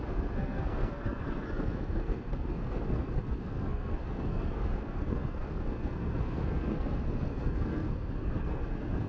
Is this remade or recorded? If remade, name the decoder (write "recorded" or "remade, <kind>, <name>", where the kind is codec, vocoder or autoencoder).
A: remade, codec, SNAC